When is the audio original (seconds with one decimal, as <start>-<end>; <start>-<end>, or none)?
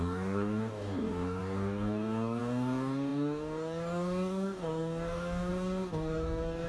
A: none